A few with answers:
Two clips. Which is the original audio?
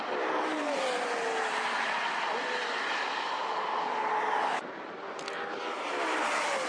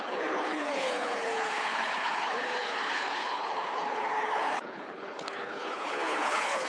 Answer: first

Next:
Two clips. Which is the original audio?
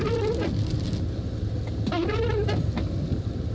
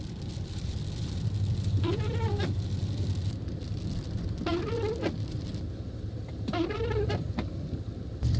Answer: first